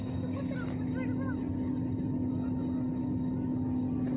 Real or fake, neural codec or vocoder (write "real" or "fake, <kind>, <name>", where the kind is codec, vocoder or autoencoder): real